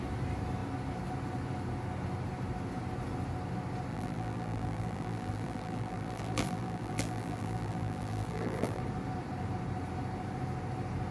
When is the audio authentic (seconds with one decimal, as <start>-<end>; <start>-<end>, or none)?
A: 0.0-3.9; 8.8-11.1